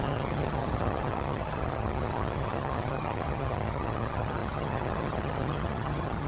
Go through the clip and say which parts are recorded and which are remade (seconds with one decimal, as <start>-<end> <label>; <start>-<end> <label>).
0.0-6.3 remade

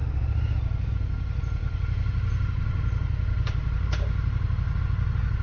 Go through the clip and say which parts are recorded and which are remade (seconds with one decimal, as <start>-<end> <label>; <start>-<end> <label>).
0.0-5.4 recorded

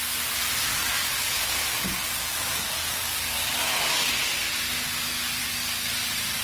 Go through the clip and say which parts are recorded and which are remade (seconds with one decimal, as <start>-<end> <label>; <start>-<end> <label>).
0.0-0.7 recorded; 0.7-4.1 remade; 4.1-5.4 recorded; 5.4-5.9 remade; 5.9-6.4 recorded

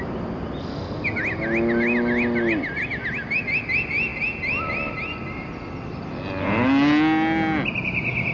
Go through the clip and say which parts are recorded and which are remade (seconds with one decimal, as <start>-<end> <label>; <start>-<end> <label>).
0.0-8.3 recorded

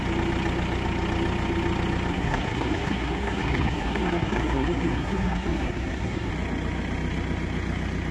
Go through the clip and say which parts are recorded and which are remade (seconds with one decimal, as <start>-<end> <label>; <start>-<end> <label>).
0.0-2.1 recorded; 2.1-6.3 remade; 6.3-8.1 recorded

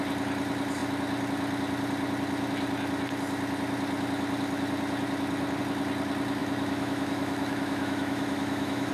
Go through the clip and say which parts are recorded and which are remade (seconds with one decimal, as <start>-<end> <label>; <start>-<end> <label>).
0.0-6.4 recorded; 6.4-8.9 remade